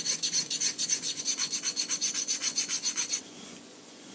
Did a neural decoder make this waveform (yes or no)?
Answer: yes